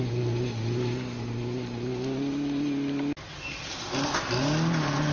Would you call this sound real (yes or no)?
yes